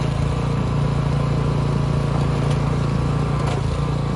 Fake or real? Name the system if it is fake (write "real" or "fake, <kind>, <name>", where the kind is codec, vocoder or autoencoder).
real